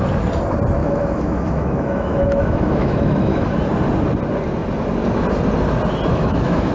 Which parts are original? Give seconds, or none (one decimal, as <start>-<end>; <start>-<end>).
0.0-0.8; 3.5-6.1